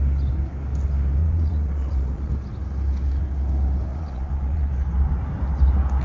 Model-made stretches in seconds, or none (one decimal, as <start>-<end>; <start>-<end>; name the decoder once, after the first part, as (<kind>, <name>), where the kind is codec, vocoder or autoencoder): 1.2-2.3 (vocoder, Vocos); 3.9-4.7